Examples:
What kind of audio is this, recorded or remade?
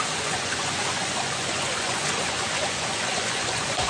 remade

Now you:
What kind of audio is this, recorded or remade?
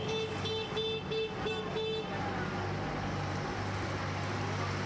recorded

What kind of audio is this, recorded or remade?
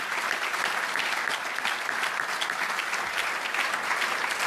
recorded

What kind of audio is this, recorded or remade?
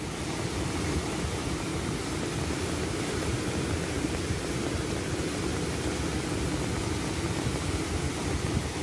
recorded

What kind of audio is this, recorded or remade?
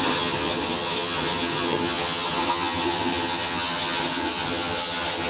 remade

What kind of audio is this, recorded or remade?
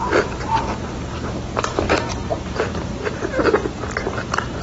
recorded